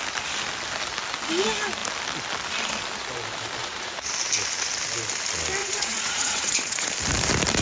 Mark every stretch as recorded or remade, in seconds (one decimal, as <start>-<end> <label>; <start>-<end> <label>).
0.0-3.6 recorded; 3.6-4.1 remade; 4.1-5.6 recorded; 5.6-6.9 remade; 6.9-7.6 recorded